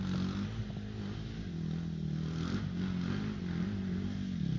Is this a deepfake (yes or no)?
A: no